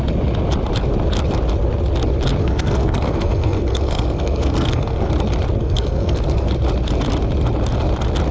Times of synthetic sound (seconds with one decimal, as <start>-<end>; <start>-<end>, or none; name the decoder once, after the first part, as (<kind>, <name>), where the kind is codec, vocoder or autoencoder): 2.4-5.1 (codec, SNAC); 5.6-6.5